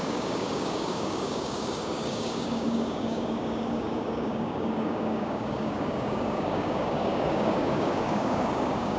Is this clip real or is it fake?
fake